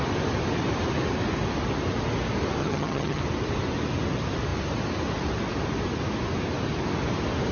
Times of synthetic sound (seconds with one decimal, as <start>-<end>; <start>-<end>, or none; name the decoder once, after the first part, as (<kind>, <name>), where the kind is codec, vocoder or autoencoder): 2.6-3.2 (vocoder, HiFi-GAN)